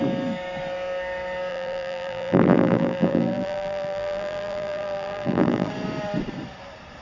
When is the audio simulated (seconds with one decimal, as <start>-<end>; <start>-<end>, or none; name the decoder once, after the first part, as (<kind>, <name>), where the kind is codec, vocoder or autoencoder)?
1.5-5.7 (vocoder, BigVGAN v2)